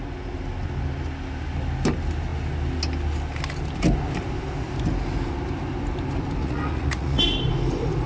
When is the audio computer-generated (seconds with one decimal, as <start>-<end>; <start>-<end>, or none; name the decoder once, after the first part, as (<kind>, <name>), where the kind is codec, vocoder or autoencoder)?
6.4-7.2 (vocoder, Vocos)